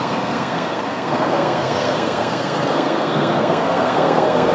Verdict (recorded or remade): remade